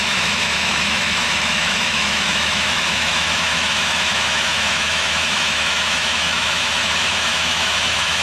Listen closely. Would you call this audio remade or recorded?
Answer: remade